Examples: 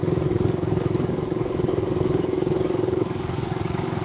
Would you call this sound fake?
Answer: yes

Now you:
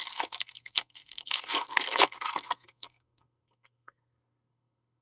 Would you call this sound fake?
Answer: yes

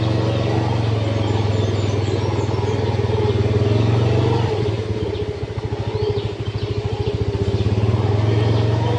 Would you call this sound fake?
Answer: no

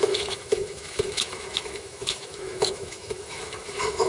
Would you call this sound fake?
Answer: yes